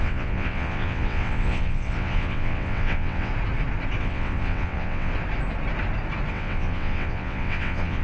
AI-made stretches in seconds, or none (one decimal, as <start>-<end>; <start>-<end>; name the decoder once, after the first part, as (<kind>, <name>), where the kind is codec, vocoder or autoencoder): 0.0-3.3 (vocoder, WaveNeXt); 4.0-5.1; 6.3-8.0